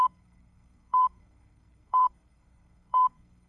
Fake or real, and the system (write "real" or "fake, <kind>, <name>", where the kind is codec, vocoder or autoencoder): fake, codec, SNAC